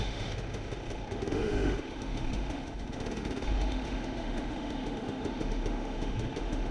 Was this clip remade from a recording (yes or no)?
yes